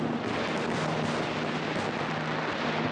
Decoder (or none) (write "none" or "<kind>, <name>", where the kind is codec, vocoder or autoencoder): none